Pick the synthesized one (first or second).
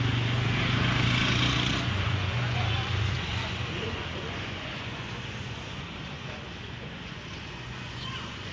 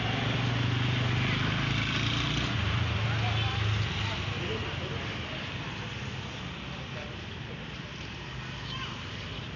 first